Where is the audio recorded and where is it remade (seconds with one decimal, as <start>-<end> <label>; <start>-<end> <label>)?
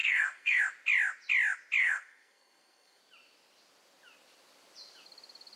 0.0-0.6 remade; 0.6-1.8 recorded; 1.8-3.0 remade; 3.0-5.6 recorded